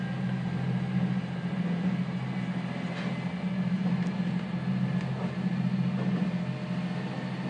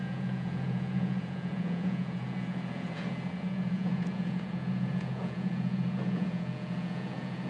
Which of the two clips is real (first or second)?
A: first